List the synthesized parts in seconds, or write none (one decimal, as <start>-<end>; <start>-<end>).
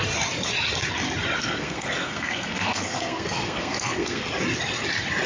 1.4-4.3